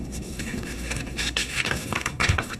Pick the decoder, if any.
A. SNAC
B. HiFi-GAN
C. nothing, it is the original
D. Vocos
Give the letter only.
A